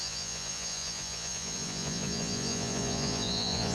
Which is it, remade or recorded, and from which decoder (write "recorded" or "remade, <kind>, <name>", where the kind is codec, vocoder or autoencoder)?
remade, vocoder, Vocos